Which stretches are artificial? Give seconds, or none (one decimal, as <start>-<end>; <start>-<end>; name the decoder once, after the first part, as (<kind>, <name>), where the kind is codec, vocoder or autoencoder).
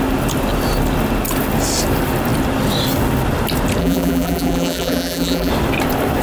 3.8-5.5 (vocoder, BigVGAN v2)